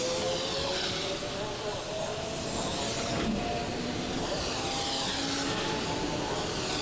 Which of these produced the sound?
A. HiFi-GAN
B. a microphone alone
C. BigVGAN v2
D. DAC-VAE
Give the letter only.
B